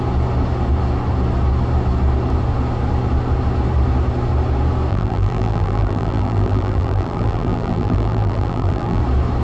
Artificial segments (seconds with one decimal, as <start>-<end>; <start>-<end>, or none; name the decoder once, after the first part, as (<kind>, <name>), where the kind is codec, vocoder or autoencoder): 4.9-9.0 (vocoder, BigVGAN v2)